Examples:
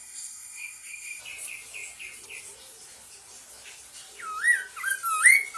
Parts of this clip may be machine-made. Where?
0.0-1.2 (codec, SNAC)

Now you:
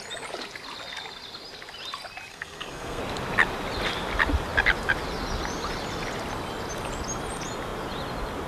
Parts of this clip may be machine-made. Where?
2.3-3.0 (codec, SNAC)